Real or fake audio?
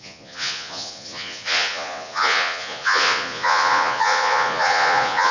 fake